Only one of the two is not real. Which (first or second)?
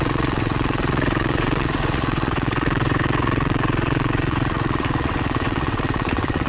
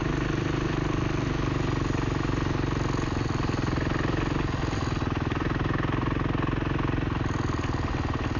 first